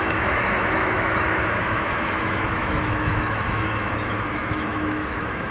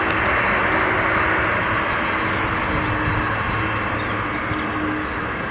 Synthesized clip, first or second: first